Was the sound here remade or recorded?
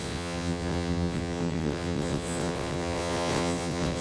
remade